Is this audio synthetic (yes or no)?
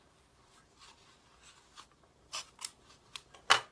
no